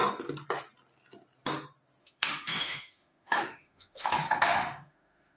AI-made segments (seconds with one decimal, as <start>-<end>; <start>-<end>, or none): 2.0-5.4